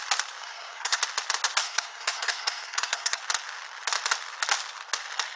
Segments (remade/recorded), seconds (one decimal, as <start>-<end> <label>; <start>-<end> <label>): 0.0-0.4 recorded; 0.4-1.0 remade; 1.0-1.6 recorded; 1.6-3.2 remade; 3.2-5.4 recorded